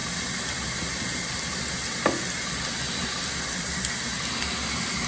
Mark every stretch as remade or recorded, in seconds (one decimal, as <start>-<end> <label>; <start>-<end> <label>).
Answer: 0.0-5.1 recorded